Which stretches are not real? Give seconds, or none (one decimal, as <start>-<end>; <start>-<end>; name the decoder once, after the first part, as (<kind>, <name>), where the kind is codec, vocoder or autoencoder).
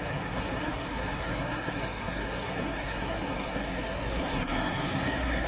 0.0-5.5 (codec, SNAC)